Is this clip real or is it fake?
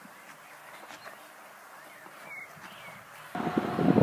real